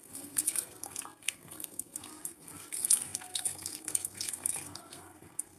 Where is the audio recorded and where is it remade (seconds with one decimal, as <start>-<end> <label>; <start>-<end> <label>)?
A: 0.0-5.6 remade